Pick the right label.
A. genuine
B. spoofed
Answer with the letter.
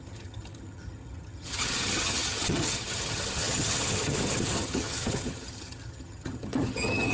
B